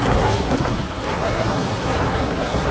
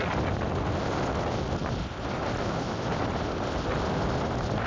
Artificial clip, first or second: first